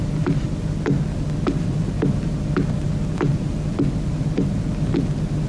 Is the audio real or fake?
real